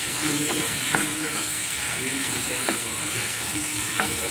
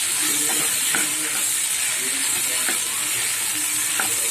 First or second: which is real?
second